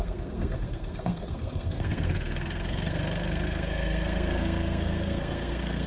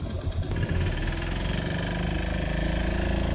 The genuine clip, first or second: second